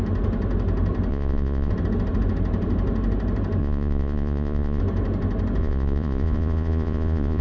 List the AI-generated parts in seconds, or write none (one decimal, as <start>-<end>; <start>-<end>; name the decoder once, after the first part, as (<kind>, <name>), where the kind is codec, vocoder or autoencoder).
1.1-1.7 (vocoder, Vocos); 3.6-4.8; 5.6-7.4